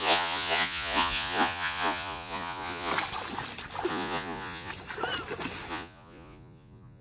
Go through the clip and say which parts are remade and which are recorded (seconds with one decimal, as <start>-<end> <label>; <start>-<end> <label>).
0.0-2.9 remade; 2.9-3.9 recorded; 3.9-4.7 remade; 4.7-5.7 recorded; 5.7-7.0 remade